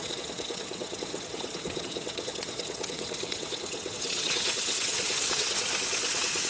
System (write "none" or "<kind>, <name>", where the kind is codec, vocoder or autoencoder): vocoder, WaveNeXt